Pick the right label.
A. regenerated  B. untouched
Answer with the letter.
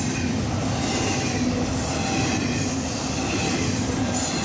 B